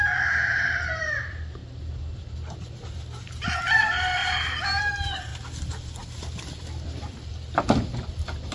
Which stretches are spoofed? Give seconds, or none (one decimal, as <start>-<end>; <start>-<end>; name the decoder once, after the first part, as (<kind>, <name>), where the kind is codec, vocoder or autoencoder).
0.0-1.6 (vocoder, BigVGAN v2); 2.2-4.2; 4.8-5.3; 6.4-8.5

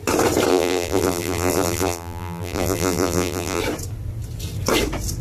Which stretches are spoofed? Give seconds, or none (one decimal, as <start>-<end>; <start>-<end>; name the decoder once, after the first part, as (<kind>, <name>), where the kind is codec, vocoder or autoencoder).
0.5-3.6 (vocoder, BigVGAN v2)

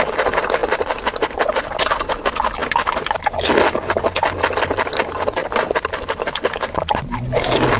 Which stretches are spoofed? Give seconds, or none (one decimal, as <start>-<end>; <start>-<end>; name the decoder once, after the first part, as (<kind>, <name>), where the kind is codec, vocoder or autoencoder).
5.4-7.2 (vocoder, BigVGAN v2)

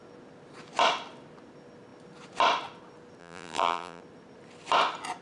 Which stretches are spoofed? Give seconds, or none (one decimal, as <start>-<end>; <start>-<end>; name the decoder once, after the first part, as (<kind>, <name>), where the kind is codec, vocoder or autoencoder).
3.2-4.0 (vocoder, BigVGAN v2)